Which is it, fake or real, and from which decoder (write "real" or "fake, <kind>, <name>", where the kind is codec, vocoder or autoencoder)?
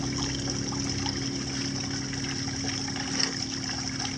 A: real